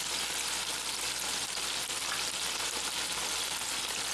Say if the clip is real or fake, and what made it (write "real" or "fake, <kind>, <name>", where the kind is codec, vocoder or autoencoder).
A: real